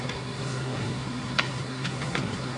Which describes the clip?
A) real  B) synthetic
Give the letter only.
B